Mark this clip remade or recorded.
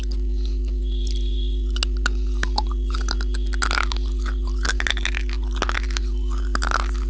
recorded